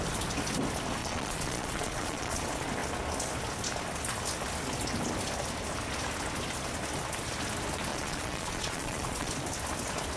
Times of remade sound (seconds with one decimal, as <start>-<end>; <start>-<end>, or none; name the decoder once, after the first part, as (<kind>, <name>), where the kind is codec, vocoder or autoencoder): 1.0-2.4 (vocoder, Vocos); 7.9-9.3